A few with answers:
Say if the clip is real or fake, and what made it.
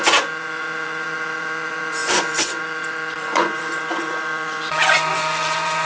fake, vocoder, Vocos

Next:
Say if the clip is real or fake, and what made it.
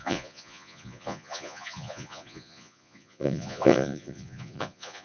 fake, vocoder, Vocos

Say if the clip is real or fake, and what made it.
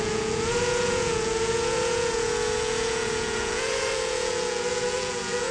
fake, vocoder, Vocos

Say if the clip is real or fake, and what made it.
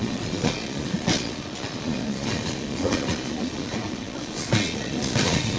fake, vocoder, Vocos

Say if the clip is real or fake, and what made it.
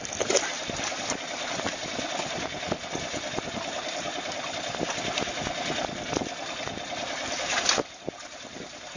real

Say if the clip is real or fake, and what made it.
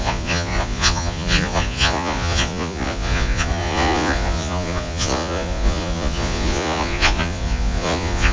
fake, vocoder, Vocos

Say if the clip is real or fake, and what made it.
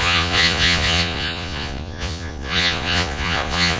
fake, vocoder, Vocos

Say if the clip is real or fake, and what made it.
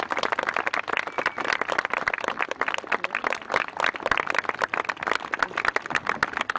real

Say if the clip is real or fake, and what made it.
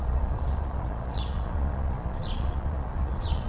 fake, vocoder, Vocos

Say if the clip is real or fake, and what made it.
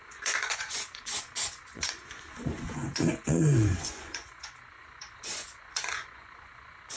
fake, vocoder, Vocos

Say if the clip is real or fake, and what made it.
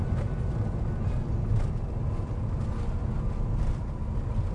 real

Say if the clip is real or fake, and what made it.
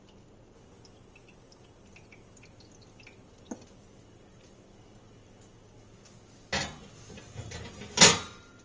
real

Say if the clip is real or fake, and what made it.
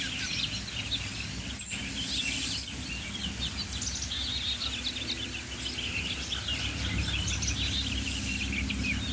real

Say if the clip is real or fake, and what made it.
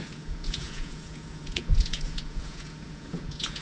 fake, vocoder, Vocos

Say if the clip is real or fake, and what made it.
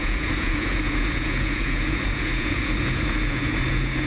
fake, vocoder, Vocos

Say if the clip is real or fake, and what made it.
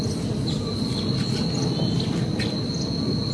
real